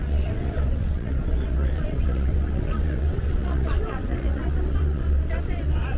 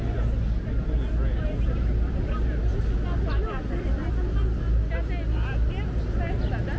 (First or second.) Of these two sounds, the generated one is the first